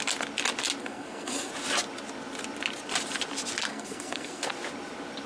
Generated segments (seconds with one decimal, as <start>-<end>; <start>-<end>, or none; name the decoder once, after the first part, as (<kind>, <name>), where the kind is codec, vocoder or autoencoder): 0.8-1.5 (codec, SNAC); 3.7-4.5